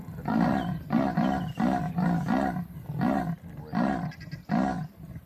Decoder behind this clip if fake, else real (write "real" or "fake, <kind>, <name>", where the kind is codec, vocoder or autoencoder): real